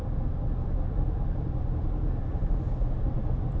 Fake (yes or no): no